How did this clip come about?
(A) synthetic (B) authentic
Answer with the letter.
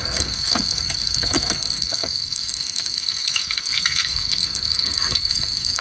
A